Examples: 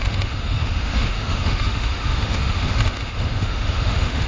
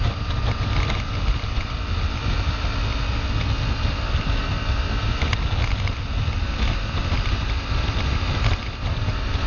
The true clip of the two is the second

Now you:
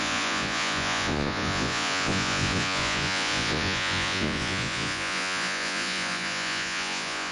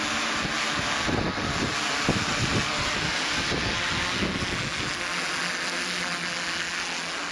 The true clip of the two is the second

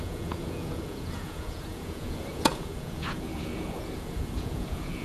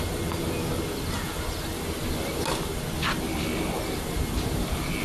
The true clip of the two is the second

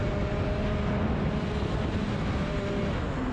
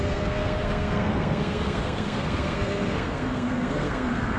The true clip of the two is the first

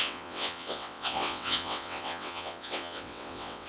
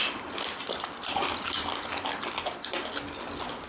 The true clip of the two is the second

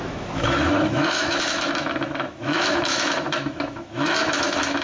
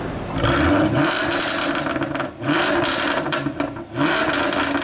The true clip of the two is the second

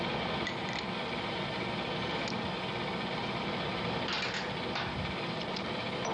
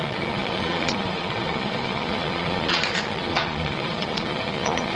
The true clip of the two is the first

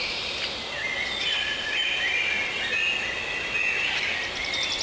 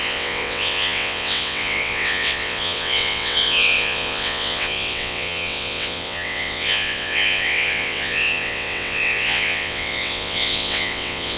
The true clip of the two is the first